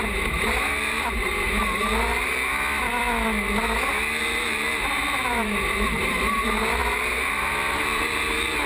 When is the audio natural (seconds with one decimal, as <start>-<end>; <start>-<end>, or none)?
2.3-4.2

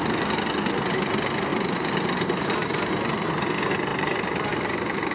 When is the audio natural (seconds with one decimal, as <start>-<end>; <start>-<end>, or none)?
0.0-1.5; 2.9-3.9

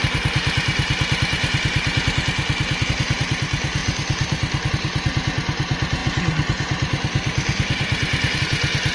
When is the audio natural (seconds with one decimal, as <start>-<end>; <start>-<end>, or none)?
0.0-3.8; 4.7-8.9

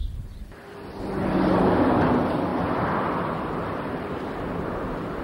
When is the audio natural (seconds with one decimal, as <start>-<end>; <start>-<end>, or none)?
1.0-2.5; 4.1-5.2